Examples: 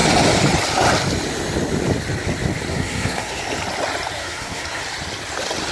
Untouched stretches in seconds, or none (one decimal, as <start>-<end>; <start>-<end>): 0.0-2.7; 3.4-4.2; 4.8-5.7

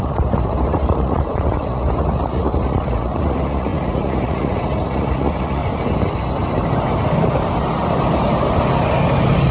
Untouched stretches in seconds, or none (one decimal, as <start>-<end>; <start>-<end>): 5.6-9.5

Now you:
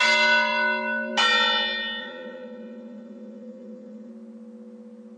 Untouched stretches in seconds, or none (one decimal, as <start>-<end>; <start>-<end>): 0.0-2.0; 4.1-5.2

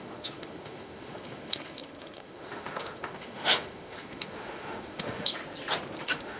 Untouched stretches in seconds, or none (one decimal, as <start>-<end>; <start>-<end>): 5.4-6.0

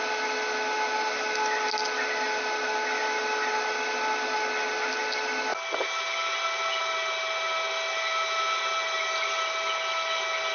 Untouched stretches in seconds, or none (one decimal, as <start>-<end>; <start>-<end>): 0.0-10.5

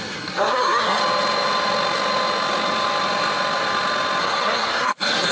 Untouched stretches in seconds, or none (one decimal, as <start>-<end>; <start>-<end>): 1.0-4.2

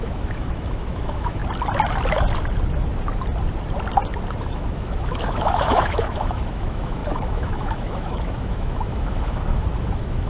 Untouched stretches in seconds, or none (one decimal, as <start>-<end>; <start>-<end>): 1.4-4.4